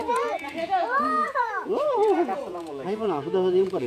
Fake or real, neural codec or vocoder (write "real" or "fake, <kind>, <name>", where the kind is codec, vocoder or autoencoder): fake, vocoder, Vocos